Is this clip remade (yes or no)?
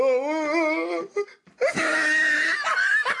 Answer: no